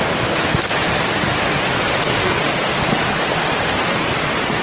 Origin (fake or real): real